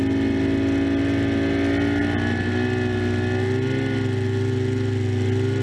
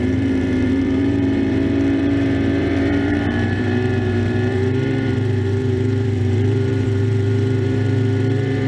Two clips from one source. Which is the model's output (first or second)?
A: second